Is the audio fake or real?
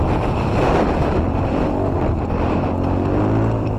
real